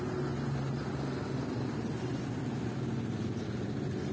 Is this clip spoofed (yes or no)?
no